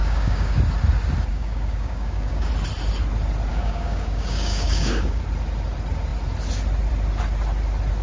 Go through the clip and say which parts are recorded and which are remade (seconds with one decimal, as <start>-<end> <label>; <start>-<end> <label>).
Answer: 0.0-0.6 remade; 0.6-1.3 recorded; 1.3-2.5 remade; 2.5-3.5 recorded; 3.5-5.2 remade; 5.2-8.0 recorded